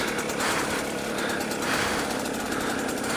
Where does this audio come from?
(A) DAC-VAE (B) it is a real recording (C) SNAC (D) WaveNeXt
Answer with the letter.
B